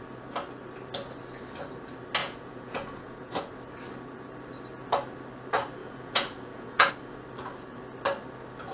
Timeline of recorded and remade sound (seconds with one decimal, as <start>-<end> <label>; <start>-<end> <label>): 0.0-2.2 recorded; 2.2-3.5 remade; 3.5-5.8 recorded; 5.8-6.9 remade; 6.9-8.7 recorded